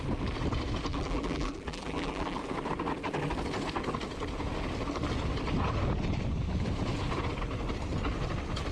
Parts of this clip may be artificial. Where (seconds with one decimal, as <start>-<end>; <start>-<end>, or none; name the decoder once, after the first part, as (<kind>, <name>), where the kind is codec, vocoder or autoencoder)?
0.9-2.4 (vocoder, BigVGAN v2)